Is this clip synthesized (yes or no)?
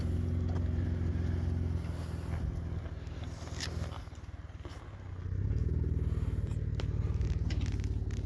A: no